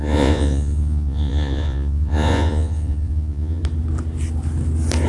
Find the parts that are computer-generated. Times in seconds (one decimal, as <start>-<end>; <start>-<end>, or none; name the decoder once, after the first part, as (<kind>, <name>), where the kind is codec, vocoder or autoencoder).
0.0-3.6 (vocoder, Vocos)